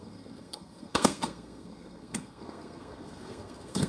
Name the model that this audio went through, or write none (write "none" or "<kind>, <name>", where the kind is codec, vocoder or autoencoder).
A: codec, SNAC